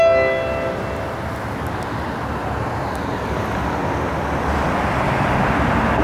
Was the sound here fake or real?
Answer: real